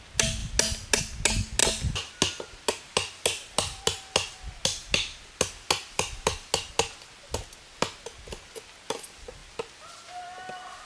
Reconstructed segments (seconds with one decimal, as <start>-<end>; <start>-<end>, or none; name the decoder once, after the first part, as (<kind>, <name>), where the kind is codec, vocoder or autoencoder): none